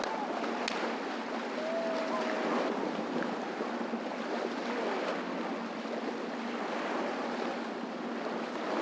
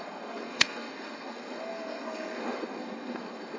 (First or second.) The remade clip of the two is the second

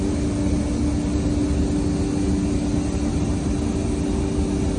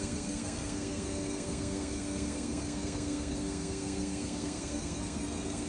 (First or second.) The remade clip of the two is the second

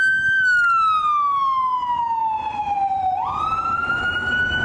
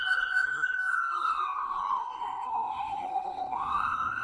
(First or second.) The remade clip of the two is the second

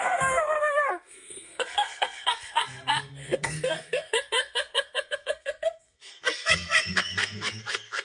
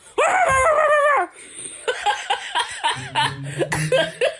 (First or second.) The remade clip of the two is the first